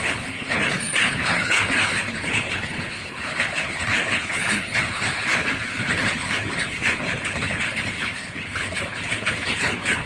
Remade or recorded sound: remade